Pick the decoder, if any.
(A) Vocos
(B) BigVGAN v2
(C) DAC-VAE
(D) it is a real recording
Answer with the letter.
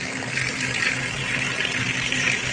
B